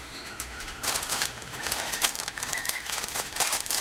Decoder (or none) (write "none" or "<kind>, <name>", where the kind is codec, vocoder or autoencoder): autoencoder, DAC-VAE